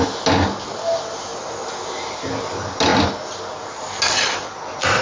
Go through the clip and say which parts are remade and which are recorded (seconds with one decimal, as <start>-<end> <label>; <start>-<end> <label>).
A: 0.0-5.0 recorded